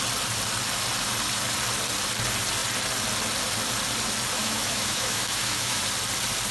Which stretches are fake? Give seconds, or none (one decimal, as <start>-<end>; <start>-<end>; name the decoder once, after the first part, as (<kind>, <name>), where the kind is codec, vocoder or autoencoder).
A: 4.4-5.8 (autoencoder, DAC-VAE)